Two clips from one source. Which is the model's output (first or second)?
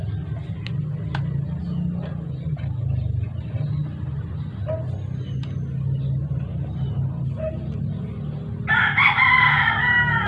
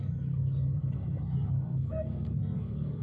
second